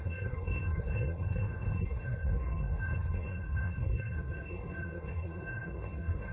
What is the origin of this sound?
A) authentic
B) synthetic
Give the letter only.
B